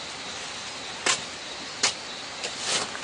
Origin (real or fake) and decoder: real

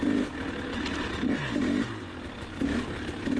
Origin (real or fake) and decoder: real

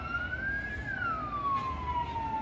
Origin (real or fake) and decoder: real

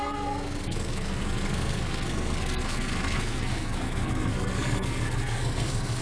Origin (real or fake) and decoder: fake, codec, SNAC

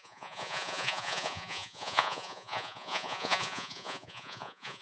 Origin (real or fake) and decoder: fake, vocoder, Vocos